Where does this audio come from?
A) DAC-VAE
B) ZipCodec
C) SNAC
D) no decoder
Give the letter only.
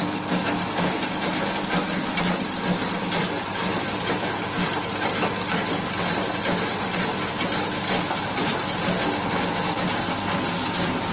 D